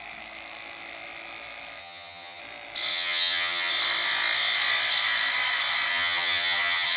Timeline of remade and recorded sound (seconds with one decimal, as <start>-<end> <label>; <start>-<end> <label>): 0.0-1.8 recorded; 1.8-2.4 remade; 2.4-2.9 recorded; 2.9-3.7 remade; 3.7-5.9 recorded; 5.9-7.0 remade